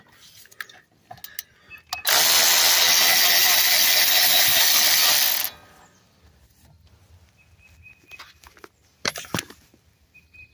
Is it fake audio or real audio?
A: real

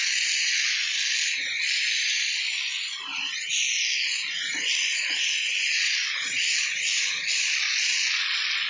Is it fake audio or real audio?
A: real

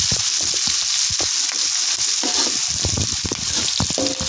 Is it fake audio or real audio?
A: real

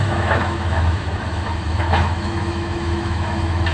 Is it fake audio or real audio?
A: fake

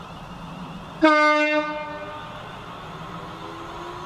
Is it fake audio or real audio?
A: real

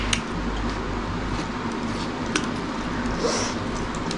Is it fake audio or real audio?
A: real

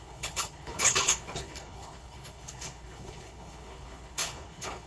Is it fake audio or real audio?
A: fake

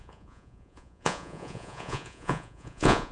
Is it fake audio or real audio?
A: fake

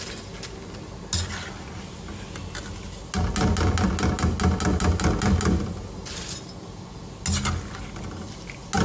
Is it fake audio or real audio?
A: real